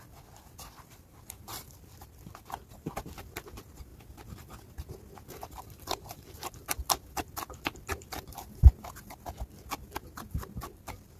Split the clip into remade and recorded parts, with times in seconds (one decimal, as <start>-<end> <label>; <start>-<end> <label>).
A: 0.0-3.9 remade; 3.9-5.3 recorded; 5.3-11.2 remade